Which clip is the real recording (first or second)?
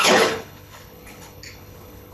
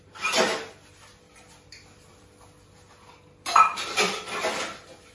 second